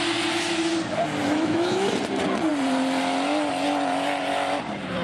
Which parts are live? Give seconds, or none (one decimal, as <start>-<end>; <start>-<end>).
0.0-1.2; 1.9-5.0